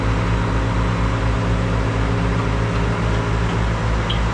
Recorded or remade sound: recorded